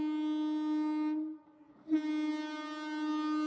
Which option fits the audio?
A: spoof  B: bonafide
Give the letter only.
B